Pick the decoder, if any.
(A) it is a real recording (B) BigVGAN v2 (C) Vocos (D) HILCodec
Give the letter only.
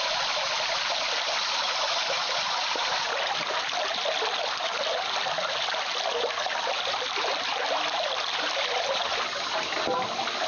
A